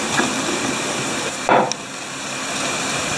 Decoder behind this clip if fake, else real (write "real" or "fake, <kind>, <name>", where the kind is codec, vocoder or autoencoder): real